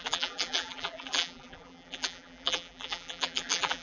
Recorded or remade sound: remade